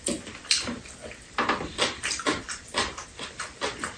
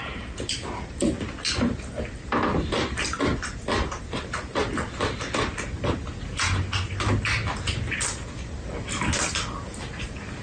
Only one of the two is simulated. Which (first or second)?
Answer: first